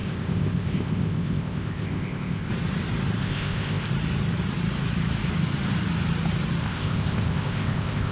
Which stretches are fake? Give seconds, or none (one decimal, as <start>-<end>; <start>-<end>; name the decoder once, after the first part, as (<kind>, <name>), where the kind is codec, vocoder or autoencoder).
0.0-2.5 (codec, ZipCodec); 3.2-3.9; 6.6-8.1